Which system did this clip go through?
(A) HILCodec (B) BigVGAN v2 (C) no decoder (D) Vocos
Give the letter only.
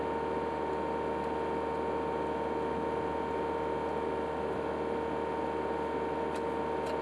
C